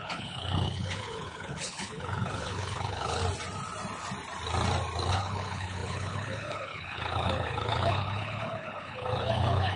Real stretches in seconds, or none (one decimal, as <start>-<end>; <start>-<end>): 3.2-5.1